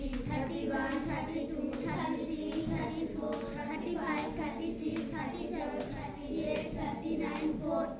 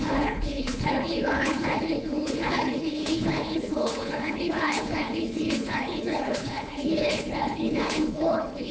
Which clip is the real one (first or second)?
first